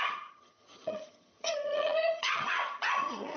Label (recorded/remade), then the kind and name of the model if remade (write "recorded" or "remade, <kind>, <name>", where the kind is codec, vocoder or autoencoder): remade, vocoder, HiFi-GAN